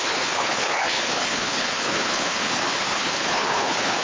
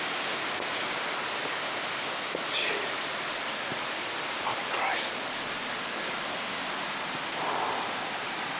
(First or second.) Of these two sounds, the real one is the second